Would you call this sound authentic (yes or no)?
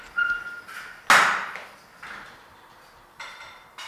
yes